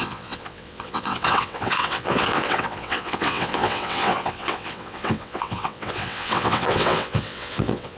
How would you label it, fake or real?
fake